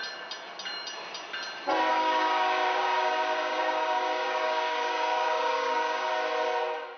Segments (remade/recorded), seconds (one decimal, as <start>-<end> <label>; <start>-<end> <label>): 0.0-1.9 recorded; 1.9-6.1 remade; 6.1-7.0 recorded